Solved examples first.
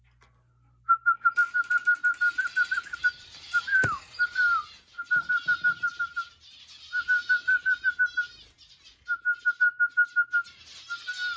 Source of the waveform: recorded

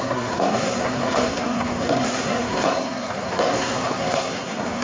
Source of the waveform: remade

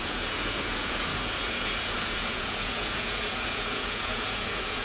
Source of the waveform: remade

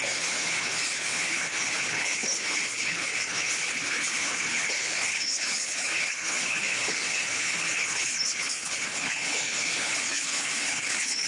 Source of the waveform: remade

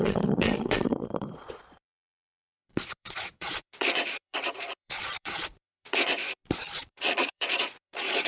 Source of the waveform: remade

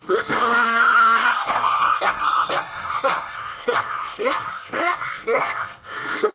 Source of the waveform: remade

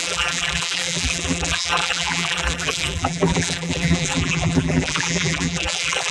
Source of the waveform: remade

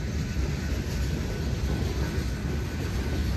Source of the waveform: recorded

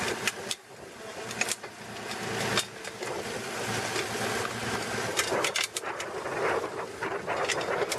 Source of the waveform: recorded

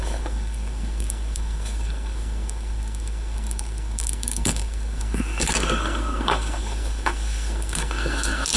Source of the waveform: remade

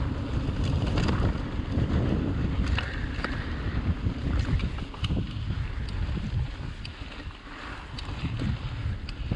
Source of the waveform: recorded